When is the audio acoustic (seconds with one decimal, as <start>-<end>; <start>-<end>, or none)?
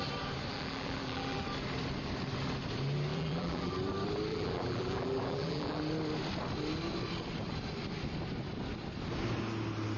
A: 0.0-0.5; 1.4-3.1; 3.7-4.3; 5.8-10.0